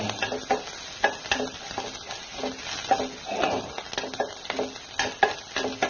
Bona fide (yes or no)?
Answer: yes